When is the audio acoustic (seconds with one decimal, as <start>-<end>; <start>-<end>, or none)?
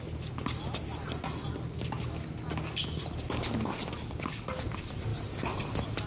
0.0-6.1